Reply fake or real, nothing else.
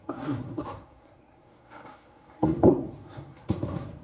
fake